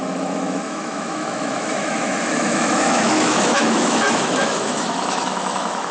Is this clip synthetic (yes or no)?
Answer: yes